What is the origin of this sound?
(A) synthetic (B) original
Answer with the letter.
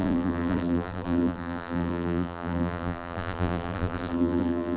A